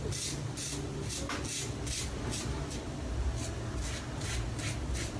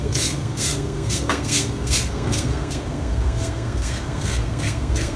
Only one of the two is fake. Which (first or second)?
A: second